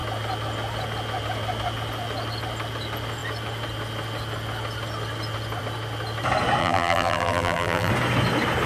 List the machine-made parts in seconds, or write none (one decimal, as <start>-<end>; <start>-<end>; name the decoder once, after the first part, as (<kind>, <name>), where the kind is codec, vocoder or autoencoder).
6.6-7.9 (vocoder, BigVGAN v2)